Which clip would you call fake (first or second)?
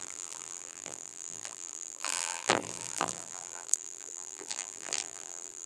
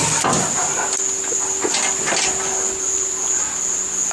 first